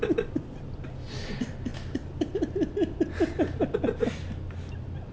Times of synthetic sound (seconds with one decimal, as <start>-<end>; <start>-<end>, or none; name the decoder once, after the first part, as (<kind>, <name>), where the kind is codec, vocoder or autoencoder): none